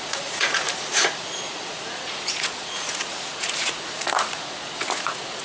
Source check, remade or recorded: remade